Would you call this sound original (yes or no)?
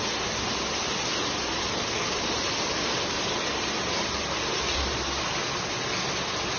yes